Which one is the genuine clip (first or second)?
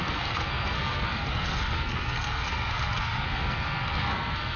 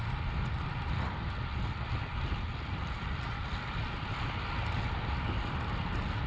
second